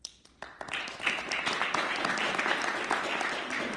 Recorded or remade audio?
recorded